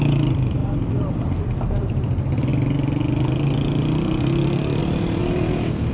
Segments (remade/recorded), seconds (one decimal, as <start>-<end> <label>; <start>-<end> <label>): 0.0-0.6 remade; 0.6-1.4 recorded; 1.4-2.5 remade; 2.5-4.8 recorded; 4.8-5.2 remade; 5.2-5.9 recorded